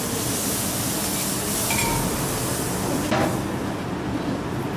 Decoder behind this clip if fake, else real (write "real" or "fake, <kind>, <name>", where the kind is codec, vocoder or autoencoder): real